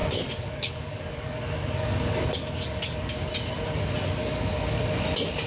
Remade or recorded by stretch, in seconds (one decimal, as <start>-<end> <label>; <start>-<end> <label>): 0.0-3.3 remade; 3.3-4.2 recorded; 4.2-5.0 remade; 5.0-5.5 recorded